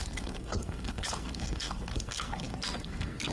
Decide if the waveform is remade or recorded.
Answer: remade